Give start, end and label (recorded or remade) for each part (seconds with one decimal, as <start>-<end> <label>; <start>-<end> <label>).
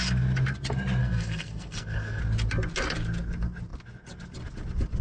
0.0-1.0 recorded; 1.0-2.2 remade; 2.2-5.0 recorded